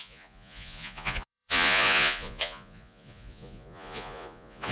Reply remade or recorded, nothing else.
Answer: remade